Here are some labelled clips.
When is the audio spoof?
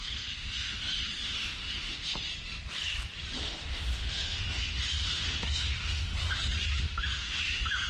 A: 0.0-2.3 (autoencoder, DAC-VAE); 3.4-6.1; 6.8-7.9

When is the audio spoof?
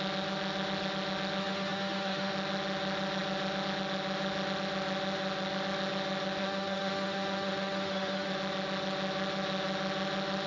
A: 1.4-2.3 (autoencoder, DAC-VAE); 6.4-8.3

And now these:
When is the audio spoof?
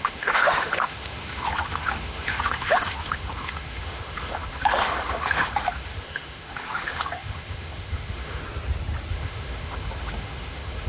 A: 0.0-8.4 (autoencoder, DAC-VAE); 9.1-10.9